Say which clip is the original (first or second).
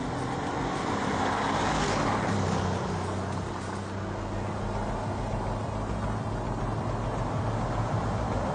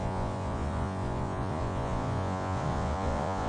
first